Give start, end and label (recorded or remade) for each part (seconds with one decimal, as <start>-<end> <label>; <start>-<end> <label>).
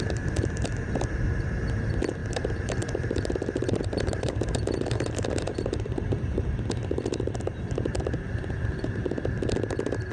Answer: 0.0-2.2 recorded; 2.2-6.7 remade; 6.7-10.1 recorded